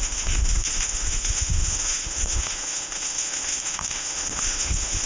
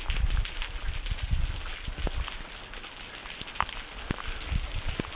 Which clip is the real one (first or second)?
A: second